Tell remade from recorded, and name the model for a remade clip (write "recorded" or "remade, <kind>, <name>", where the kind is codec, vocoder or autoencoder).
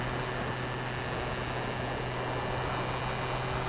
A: recorded